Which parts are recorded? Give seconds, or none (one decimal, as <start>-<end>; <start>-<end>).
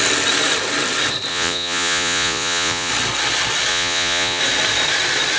0.0-1.3; 2.9-3.7; 4.4-5.4